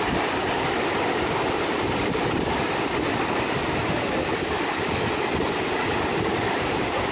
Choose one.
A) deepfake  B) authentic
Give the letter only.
B